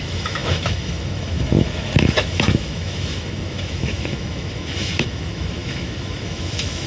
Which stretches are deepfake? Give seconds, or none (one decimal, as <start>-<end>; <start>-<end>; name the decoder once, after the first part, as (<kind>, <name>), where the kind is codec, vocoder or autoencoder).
0.0-6.9 (autoencoder, DAC-VAE)